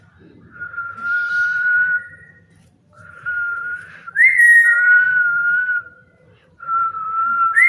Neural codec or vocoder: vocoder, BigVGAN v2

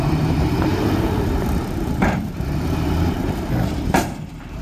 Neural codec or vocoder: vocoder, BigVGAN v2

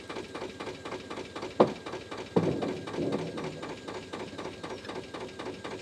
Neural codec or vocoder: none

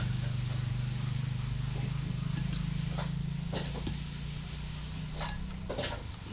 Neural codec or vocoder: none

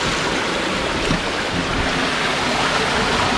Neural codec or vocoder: none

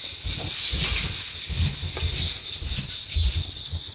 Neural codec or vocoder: none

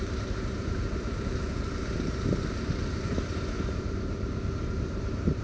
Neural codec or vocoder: vocoder, BigVGAN v2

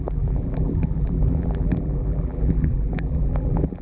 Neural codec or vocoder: vocoder, BigVGAN v2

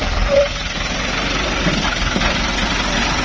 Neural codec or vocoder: vocoder, BigVGAN v2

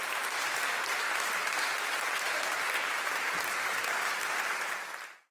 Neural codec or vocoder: vocoder, BigVGAN v2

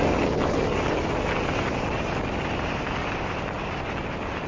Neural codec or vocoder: none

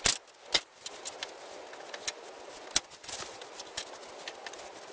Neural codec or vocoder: none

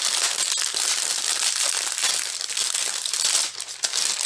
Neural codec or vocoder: vocoder, BigVGAN v2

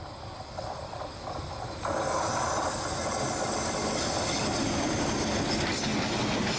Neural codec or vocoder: none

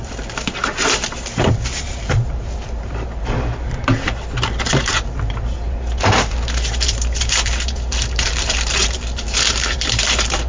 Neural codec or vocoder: vocoder, BigVGAN v2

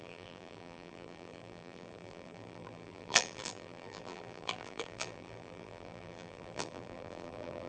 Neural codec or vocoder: vocoder, BigVGAN v2